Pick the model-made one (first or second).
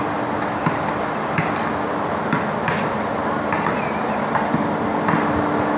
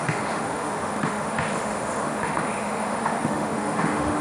second